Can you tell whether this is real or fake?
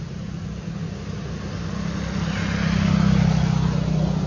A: real